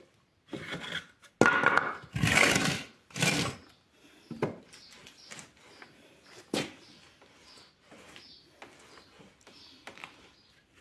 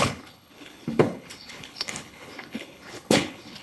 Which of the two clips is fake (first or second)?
second